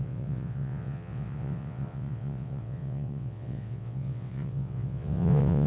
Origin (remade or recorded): remade